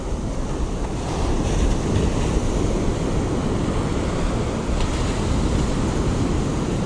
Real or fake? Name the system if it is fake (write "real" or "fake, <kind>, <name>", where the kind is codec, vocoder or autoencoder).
real